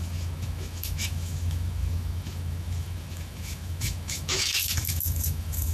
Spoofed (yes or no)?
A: yes